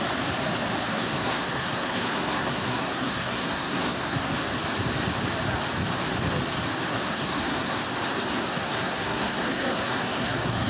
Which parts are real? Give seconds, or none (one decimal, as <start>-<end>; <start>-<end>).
0.0-0.9; 4.3-6.9; 7.8-8.3